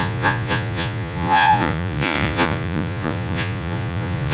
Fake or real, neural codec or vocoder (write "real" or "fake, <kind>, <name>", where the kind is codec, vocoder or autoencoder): fake, vocoder, Vocos